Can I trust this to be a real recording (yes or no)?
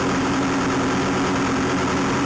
yes